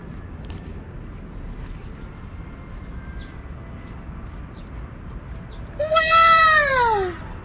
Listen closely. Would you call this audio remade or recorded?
recorded